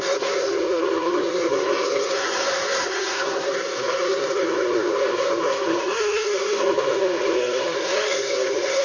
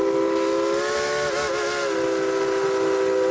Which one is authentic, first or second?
second